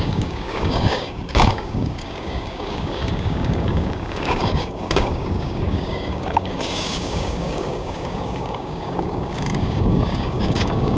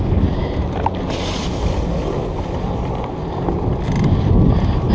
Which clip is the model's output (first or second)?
first